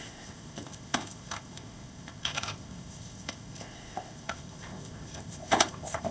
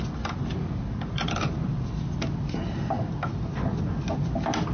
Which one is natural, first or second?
second